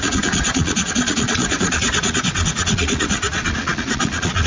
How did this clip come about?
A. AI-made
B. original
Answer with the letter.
A